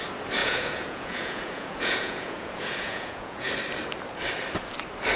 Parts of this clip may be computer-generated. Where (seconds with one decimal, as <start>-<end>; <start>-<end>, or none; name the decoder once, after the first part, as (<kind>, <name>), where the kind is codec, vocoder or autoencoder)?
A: 0.4-3.5 (vocoder, Vocos)

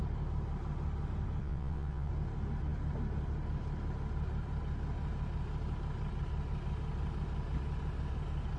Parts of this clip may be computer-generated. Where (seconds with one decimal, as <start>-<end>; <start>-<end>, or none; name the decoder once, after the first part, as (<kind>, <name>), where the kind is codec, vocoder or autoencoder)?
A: 1.4-2.1 (vocoder, WaveNeXt)

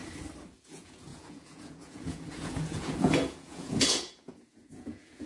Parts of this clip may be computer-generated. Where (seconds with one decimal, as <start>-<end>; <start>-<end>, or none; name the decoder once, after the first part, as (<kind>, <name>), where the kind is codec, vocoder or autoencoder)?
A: 0.5-5.3 (vocoder, Vocos)

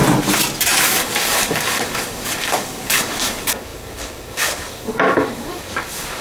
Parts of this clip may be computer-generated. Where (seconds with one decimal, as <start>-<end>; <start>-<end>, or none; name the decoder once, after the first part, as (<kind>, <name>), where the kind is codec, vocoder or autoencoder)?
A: 0.8-6.2 (codec, DAC)

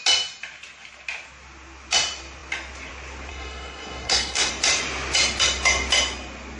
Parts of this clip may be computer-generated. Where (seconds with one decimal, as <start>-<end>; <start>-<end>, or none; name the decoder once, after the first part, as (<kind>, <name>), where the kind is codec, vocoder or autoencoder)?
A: 3.3-4.5 (codec, SNAC)